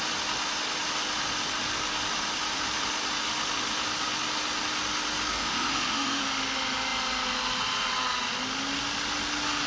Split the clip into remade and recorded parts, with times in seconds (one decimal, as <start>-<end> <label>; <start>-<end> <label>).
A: 0.0-5.3 recorded; 5.3-6.2 remade; 6.2-9.7 recorded